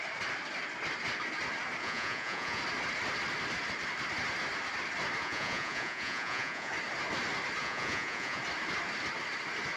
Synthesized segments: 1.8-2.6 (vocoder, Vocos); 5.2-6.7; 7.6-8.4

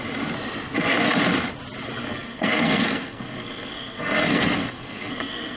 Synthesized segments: 2.0-5.6 (codec, SNAC)

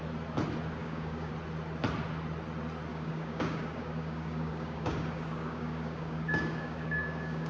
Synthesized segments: 0.8-1.3 (codec, DAC); 2.9-7.5

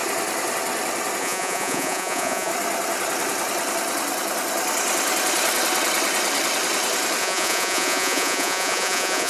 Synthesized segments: 1.2-2.5 (vocoder, Vocos); 7.2-9.3

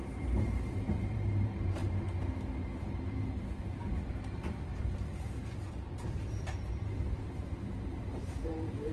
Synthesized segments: 0.0-1.8 (vocoder, BigVGAN v2); 4.0-8.9

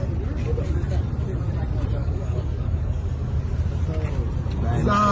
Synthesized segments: 2.0-3.4 (codec, DAC)

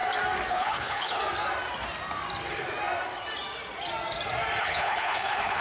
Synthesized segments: 0.5-1.2 (codec, HILCodec); 4.6-5.6